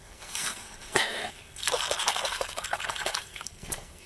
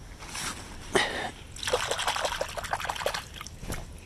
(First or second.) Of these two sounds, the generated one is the first